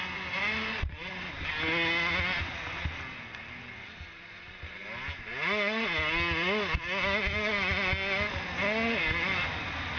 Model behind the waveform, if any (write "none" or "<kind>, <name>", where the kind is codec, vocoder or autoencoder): none